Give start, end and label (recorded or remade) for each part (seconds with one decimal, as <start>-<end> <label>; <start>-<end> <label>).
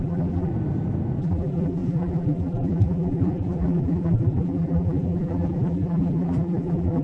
0.0-0.5 remade; 0.5-1.2 recorded; 1.2-7.0 remade